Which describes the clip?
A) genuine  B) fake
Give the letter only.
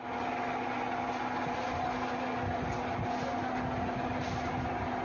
A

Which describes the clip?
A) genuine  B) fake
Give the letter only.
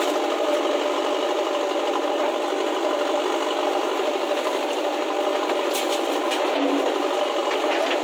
A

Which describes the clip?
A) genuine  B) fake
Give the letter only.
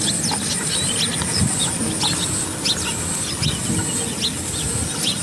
A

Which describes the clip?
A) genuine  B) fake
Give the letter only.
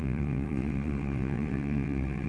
B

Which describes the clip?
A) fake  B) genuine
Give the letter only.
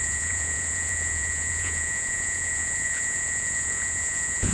A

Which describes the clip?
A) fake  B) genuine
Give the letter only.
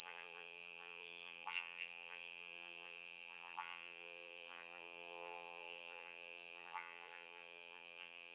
A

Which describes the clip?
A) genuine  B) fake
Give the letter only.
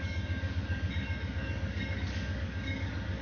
B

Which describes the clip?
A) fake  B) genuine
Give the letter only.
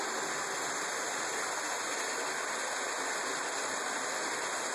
B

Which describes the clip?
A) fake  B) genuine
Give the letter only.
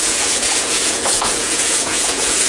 A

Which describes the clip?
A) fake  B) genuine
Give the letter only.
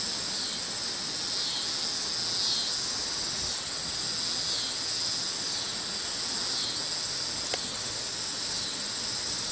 B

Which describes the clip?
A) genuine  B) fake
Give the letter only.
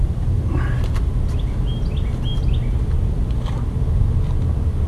A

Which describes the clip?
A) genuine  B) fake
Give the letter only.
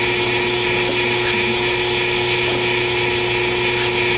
A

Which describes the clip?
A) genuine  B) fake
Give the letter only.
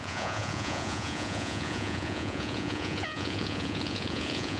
B